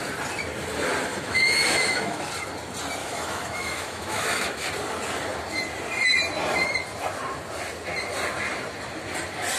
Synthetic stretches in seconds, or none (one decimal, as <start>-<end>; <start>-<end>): 1.1-2.3; 3.0-4.7